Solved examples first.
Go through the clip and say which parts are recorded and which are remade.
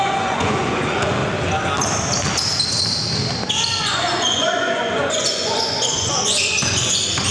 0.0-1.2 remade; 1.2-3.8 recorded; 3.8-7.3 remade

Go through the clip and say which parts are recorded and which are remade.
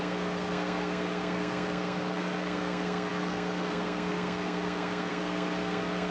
0.0-6.1 remade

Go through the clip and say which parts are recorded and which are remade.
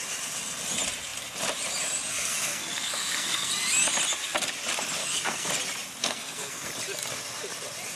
0.0-2.1 recorded; 2.1-3.5 remade; 3.5-5.0 recorded; 5.0-5.5 remade; 5.5-6.0 recorded; 6.0-6.7 remade; 6.7-8.0 recorded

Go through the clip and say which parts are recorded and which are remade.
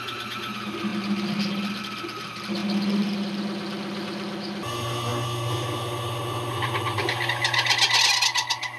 0.0-8.8 recorded